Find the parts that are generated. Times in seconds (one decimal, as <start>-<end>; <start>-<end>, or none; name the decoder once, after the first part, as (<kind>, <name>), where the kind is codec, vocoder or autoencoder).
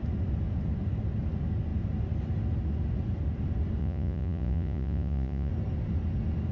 3.8-5.5 (vocoder, Vocos)